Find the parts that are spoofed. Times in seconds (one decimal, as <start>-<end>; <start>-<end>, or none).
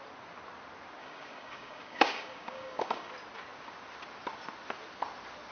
1.0-3.1